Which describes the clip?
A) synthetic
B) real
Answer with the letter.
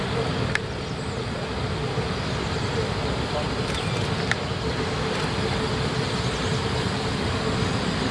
B